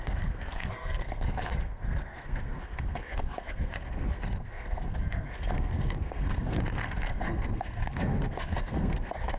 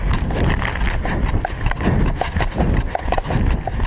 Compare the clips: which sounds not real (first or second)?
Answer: first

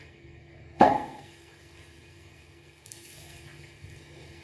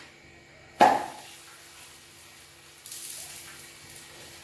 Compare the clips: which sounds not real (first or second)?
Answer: first